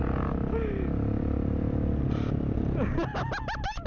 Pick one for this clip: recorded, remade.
recorded